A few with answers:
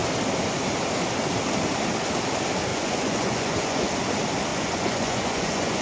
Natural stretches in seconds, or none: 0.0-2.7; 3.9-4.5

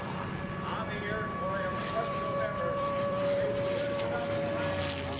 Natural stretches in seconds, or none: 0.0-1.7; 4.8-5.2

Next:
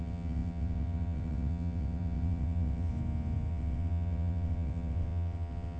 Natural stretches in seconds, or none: 2.9-3.5